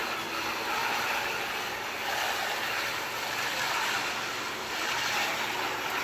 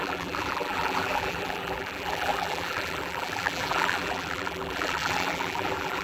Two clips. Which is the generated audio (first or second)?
second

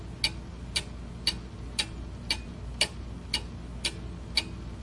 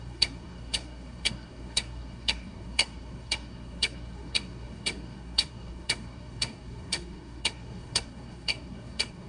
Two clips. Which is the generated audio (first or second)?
second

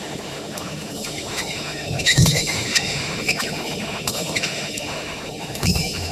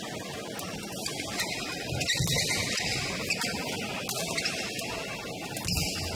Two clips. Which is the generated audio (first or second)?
first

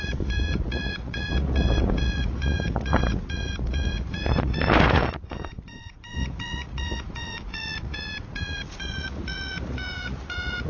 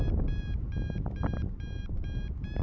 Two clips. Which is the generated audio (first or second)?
first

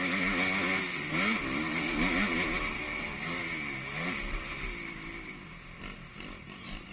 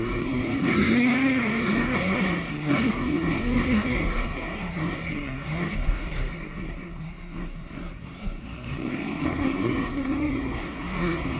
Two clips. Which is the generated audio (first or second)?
second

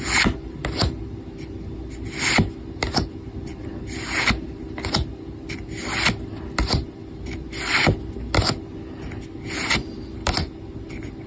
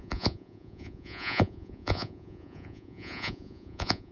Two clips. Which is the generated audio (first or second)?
second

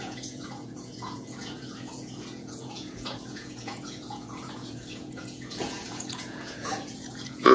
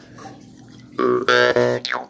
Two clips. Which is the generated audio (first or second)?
first